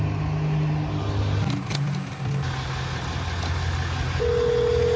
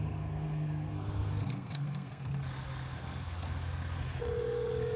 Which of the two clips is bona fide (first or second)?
first